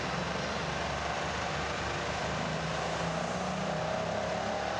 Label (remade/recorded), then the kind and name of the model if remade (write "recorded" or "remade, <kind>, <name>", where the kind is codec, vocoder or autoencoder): recorded